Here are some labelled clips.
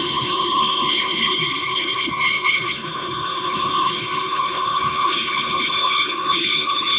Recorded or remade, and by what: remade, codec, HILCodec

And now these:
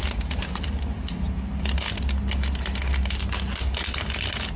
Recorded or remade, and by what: recorded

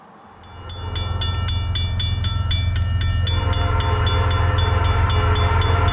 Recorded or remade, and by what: recorded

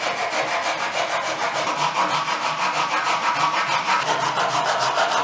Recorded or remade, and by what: recorded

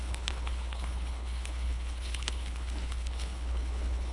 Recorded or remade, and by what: remade, codec, HILCodec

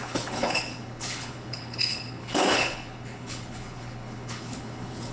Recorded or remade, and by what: remade, codec, HILCodec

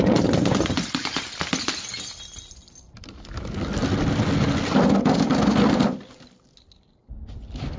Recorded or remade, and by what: recorded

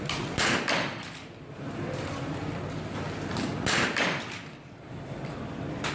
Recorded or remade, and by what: recorded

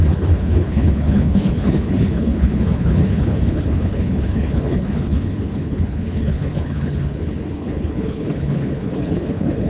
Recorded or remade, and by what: remade, codec, HILCodec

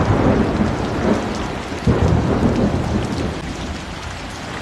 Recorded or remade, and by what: recorded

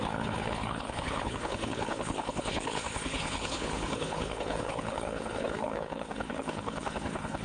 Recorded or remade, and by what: remade, codec, HILCodec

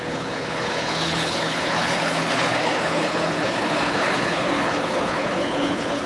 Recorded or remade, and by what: remade, codec, HILCodec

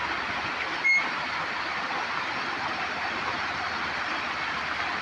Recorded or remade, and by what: recorded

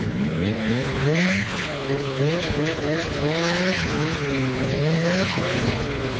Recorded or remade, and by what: remade, codec, HILCodec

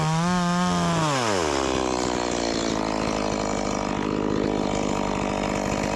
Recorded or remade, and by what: recorded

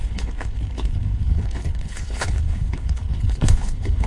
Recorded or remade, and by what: remade, codec, HILCodec